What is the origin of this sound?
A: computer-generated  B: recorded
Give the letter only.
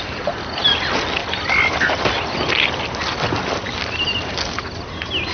B